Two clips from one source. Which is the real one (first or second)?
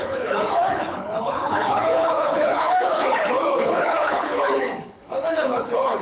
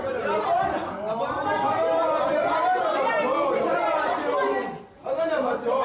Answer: second